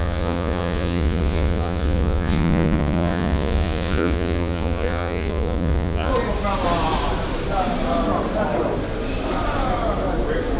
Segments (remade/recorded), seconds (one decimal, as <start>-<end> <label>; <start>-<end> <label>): 0.0-6.1 remade; 6.1-10.6 recorded